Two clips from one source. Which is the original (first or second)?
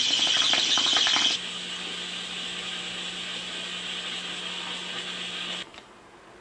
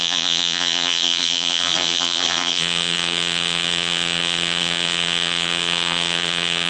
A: first